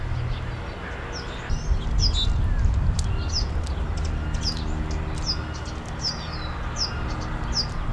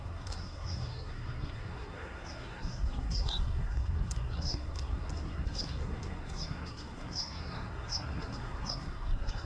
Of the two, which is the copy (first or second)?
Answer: second